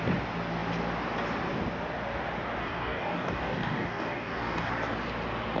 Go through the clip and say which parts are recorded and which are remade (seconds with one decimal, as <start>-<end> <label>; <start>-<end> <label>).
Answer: 0.0-2.6 recorded; 2.6-4.7 remade; 4.7-5.6 recorded

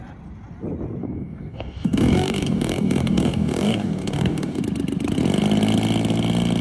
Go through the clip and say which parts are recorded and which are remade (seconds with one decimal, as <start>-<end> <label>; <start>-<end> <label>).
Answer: 0.0-1.0 recorded; 1.0-4.6 remade; 4.6-6.6 recorded

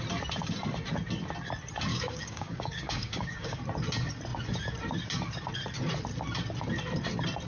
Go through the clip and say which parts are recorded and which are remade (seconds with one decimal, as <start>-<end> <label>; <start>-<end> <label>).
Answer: 0.0-1.9 recorded; 1.9-3.6 remade; 3.6-7.5 recorded